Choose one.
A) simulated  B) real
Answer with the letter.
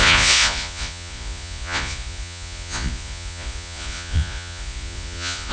A